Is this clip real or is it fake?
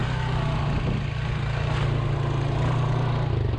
real